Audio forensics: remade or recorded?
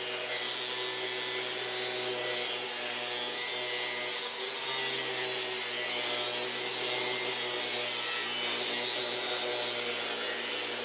recorded